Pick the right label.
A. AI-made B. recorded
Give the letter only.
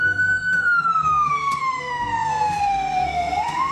A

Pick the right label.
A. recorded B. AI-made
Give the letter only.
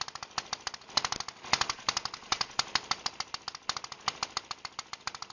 A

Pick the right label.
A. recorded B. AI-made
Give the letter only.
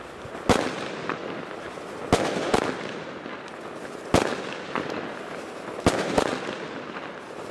A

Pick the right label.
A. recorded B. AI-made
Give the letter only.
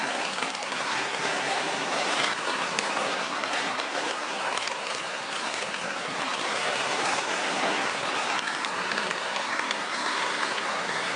B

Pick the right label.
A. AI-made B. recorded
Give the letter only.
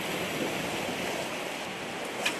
B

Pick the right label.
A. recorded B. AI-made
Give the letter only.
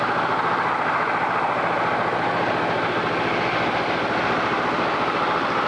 A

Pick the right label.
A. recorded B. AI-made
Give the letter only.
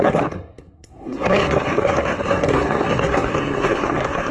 B